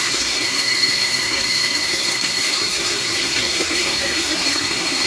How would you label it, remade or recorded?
remade